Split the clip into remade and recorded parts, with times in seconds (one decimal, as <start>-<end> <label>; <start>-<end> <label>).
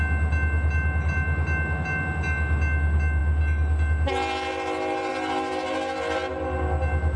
0.0-7.2 recorded